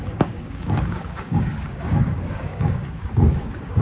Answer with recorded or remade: remade